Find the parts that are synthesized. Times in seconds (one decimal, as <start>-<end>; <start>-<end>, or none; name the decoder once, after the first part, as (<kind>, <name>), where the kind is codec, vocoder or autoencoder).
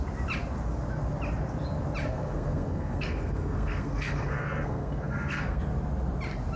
2.1-5.6 (codec, SNAC)